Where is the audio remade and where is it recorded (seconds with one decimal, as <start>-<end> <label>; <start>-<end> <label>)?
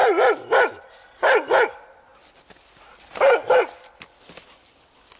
0.0-5.2 recorded